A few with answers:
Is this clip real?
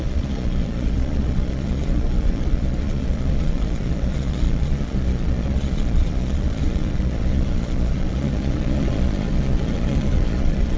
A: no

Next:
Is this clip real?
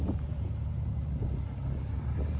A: yes